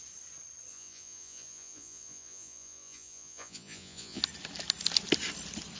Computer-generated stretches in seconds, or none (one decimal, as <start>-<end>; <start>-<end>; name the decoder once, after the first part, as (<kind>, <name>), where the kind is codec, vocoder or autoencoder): 0.7-4.2 (vocoder, Vocos)